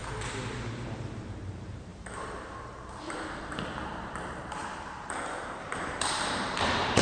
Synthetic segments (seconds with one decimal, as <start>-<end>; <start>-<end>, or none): 0.6-7.0